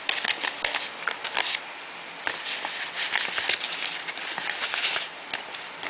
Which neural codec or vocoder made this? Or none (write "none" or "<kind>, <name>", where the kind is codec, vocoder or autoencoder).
none